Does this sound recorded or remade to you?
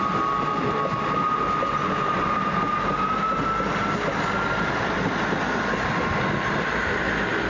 recorded